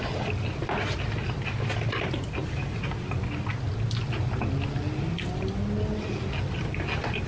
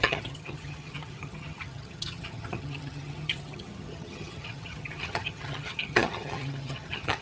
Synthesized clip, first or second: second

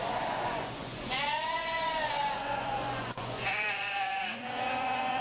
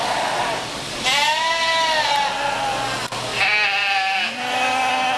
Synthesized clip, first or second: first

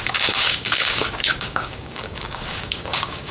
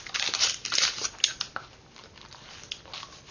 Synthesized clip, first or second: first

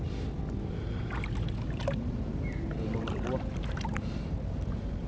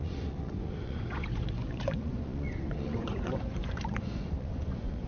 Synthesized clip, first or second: second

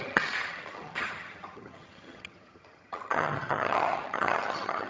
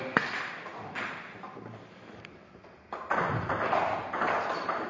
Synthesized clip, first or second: first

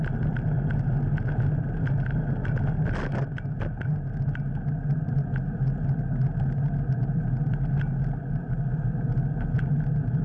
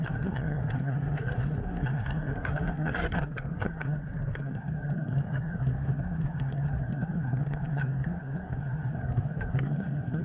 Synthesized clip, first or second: second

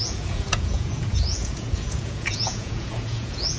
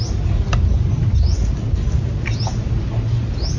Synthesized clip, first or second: first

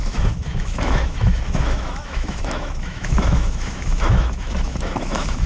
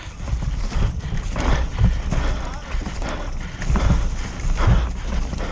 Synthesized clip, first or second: first